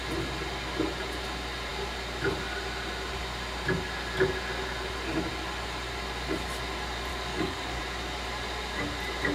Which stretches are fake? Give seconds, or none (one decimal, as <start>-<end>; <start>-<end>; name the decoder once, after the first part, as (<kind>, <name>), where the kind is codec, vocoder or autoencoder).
7.1-7.8 (codec, DAC)